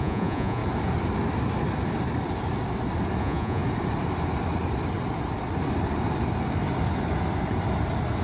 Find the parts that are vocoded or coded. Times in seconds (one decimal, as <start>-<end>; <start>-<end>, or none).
0.0-0.6; 3.2-3.6